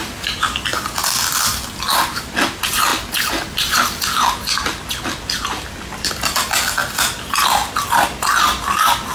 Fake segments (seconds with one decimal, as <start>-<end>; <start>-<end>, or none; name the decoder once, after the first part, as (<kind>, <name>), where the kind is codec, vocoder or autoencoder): none